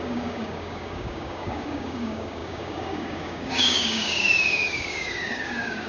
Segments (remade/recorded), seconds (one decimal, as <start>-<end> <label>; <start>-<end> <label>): 0.0-5.9 remade